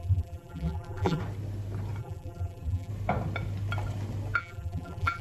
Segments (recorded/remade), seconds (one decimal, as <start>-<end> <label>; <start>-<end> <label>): 0.0-1.2 remade; 1.2-2.0 recorded; 2.0-2.9 remade; 2.9-4.4 recorded; 4.4-5.2 remade